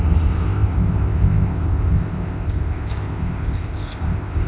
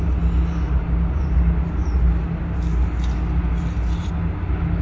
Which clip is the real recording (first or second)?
second